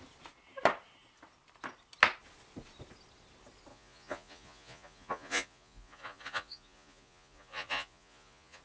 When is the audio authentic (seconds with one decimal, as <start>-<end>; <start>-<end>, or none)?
0.0-3.7